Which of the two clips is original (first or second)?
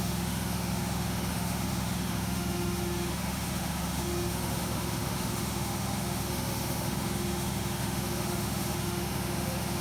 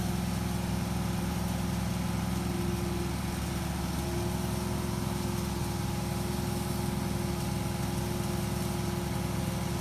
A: second